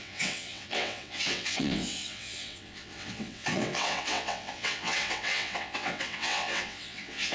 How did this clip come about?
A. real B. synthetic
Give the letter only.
B